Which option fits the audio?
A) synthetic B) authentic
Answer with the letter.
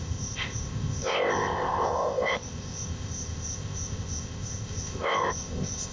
A